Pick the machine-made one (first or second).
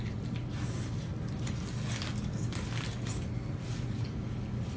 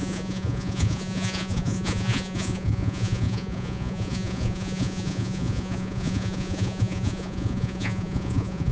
second